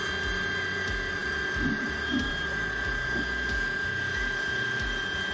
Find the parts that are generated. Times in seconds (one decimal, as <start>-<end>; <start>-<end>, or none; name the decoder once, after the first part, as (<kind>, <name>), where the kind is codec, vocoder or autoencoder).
1.2-2.3 (vocoder, BigVGAN v2)